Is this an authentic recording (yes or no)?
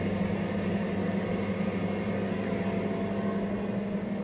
yes